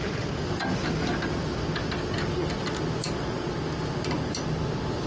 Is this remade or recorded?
recorded